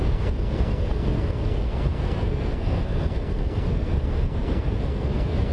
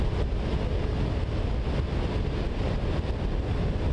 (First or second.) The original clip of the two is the second